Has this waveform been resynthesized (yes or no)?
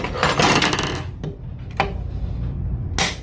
no